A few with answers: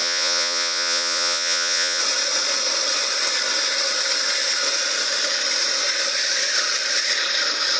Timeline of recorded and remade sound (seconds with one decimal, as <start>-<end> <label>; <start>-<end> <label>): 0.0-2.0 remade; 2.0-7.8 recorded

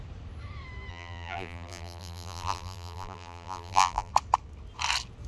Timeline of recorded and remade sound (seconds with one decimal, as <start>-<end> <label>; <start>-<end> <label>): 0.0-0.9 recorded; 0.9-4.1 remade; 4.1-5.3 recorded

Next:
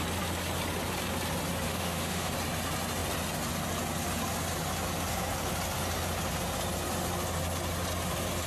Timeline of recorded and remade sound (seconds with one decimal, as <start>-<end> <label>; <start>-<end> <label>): 0.0-1.7 recorded; 1.7-2.3 remade; 2.3-8.5 recorded

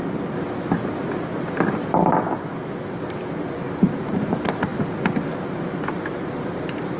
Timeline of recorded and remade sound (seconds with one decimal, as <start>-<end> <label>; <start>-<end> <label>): 0.0-2.9 recorded; 2.9-4.7 remade; 4.7-5.2 recorded; 5.2-7.0 remade

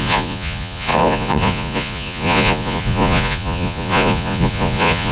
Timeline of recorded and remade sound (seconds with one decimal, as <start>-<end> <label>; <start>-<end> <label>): 0.0-5.1 remade